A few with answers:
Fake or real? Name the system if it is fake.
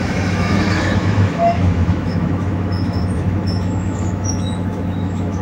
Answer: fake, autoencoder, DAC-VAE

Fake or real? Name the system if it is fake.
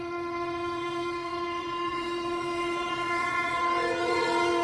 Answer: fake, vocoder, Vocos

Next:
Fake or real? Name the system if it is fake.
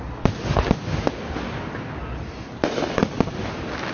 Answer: real